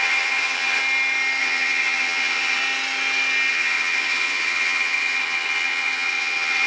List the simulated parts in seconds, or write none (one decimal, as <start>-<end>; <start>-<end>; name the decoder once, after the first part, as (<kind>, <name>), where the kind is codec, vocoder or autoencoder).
0.0-0.8 (vocoder, HiFi-GAN); 1.4-2.6; 3.5-6.7